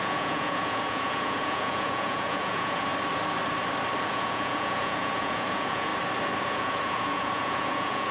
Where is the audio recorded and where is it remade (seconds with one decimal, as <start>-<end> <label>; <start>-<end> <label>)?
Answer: 0.0-2.9 remade; 2.9-4.1 recorded; 4.1-5.9 remade; 5.9-6.5 recorded; 6.5-8.1 remade